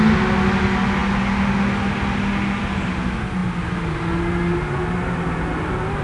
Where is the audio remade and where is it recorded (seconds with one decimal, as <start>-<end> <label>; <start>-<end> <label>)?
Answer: 0.0-6.0 recorded